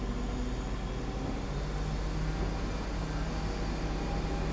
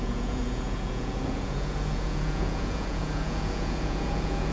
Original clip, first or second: first